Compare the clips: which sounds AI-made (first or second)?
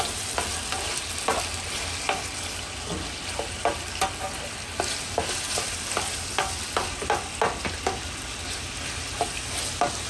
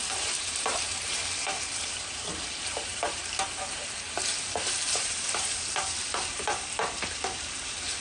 second